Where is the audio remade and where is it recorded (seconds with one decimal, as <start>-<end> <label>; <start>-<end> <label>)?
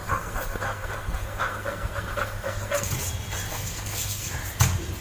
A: 0.0-2.9 remade; 2.9-3.5 recorded; 3.5-4.3 remade; 4.3-5.0 recorded